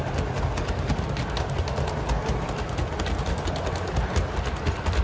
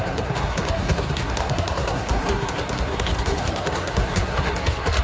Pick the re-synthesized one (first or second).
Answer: second